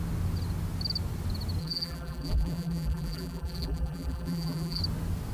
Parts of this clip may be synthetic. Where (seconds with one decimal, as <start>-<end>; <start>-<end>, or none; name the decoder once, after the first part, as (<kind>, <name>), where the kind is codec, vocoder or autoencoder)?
1.6-4.8 (vocoder, BigVGAN v2)